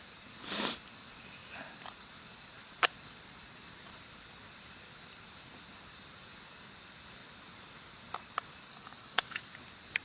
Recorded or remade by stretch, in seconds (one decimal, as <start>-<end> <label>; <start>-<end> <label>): 0.0-8.7 recorded; 8.7-9.6 remade; 9.6-10.0 recorded